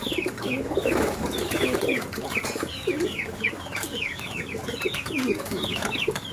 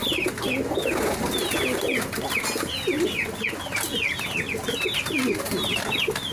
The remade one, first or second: first